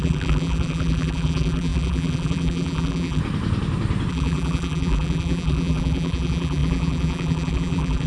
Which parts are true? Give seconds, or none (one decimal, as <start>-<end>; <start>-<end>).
3.2-4.1